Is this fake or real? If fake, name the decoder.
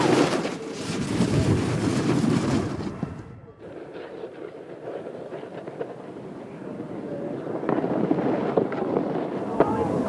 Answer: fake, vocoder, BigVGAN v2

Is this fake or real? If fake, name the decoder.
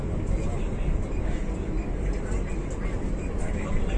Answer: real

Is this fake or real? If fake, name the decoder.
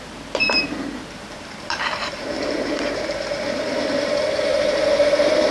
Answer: fake, vocoder, BigVGAN v2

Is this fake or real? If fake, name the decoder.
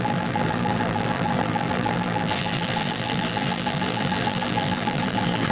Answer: fake, vocoder, BigVGAN v2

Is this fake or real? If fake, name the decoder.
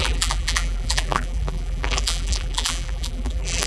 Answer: fake, vocoder, BigVGAN v2